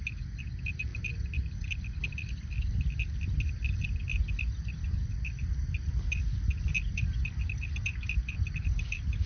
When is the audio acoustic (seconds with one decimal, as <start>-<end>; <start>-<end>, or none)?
0.0-9.3